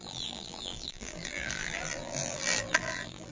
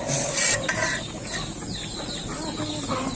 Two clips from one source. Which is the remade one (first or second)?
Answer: first